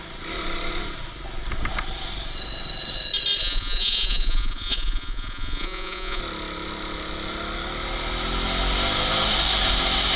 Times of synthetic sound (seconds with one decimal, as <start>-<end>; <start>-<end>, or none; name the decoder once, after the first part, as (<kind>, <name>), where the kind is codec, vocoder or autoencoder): 3.4-6.2 (vocoder, Vocos)